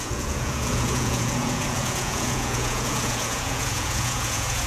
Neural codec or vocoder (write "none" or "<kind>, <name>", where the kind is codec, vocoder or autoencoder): vocoder, Vocos